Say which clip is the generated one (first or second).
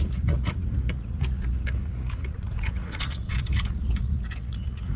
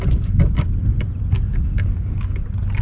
first